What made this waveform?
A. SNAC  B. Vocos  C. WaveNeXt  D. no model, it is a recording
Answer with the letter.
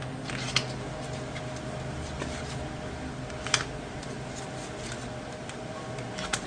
D